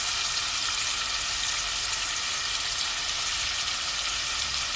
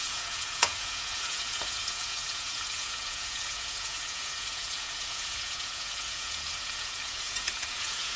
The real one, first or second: first